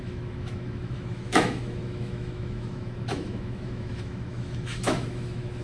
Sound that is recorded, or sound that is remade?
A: remade